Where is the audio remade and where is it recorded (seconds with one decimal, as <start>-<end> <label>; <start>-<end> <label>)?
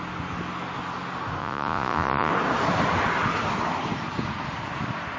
0.0-1.4 recorded; 1.4-2.3 remade; 2.3-5.2 recorded